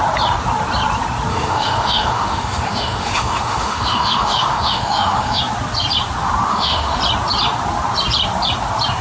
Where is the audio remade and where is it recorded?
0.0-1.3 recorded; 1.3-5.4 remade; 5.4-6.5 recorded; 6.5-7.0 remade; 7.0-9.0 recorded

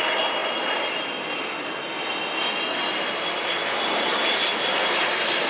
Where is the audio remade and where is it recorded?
0.0-5.5 recorded

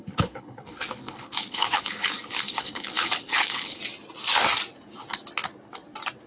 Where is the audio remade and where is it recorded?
0.0-3.8 remade; 3.8-6.3 recorded

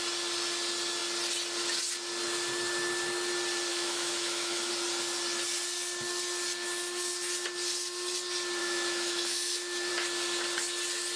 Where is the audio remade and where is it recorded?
0.0-3.7 recorded; 3.7-4.7 remade; 4.7-8.6 recorded; 8.6-9.9 remade; 9.9-11.2 recorded

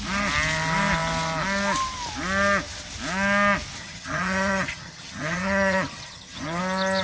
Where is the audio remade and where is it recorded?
0.0-3.8 recorded; 3.8-6.6 remade; 6.6-7.0 recorded

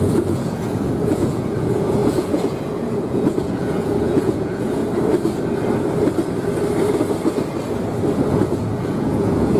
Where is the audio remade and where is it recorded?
0.0-4.8 remade; 4.8-8.3 recorded; 8.3-9.6 remade

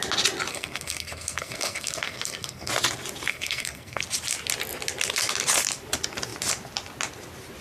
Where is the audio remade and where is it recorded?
0.0-0.5 recorded; 0.5-2.7 remade; 2.7-3.3 recorded; 3.3-4.0 remade; 4.0-7.6 recorded